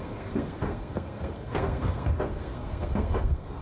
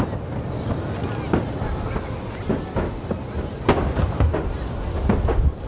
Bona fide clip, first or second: second